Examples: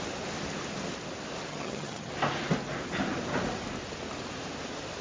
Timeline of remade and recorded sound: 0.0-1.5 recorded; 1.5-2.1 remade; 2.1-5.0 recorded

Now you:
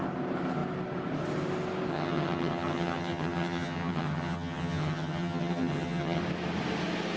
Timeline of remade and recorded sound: 0.0-1.9 recorded; 1.9-6.2 remade; 6.2-7.2 recorded

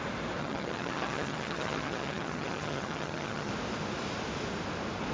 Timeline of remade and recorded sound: 0.0-0.4 recorded; 0.4-3.5 remade; 3.5-5.1 recorded